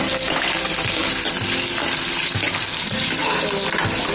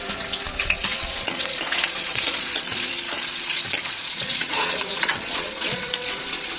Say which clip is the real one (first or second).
first